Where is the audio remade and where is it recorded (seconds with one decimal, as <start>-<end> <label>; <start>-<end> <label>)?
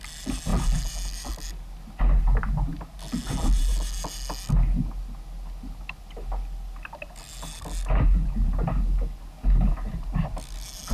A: 0.0-10.9 recorded